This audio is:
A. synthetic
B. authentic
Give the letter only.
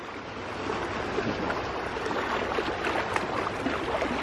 B